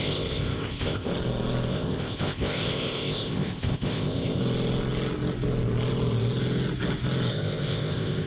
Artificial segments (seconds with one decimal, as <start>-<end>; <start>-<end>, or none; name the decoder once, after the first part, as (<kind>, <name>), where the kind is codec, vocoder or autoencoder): 0.0-1.1 (codec, ZipCodec); 1.7-4.4; 7.3-8.3